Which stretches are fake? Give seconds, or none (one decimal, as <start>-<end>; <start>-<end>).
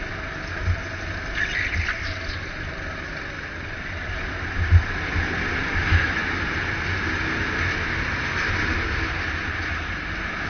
none